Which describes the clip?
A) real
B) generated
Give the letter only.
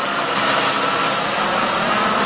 A